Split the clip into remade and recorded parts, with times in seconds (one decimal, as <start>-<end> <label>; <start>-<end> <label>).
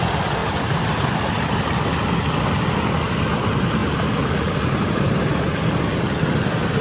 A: 0.0-0.4 recorded; 0.4-1.3 remade; 1.3-3.8 recorded; 3.8-5.5 remade; 5.5-6.8 recorded